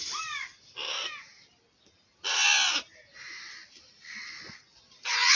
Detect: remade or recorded recorded